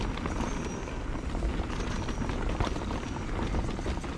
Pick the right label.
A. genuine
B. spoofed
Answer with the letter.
A